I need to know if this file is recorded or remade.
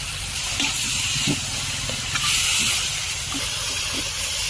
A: recorded